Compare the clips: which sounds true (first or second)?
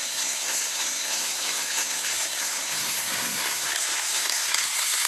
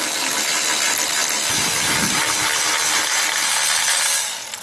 second